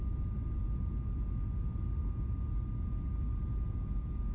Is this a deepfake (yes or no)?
no